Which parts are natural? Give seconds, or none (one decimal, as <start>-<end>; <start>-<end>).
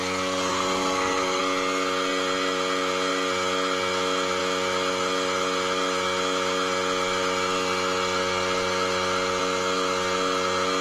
0.0-0.5; 1.4-10.8